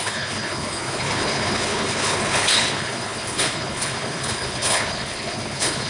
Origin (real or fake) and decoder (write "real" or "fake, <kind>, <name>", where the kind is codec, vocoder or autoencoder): fake, codec, HILCodec